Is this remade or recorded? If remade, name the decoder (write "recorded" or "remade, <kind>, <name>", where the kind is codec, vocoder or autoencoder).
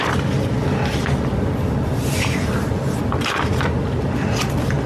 recorded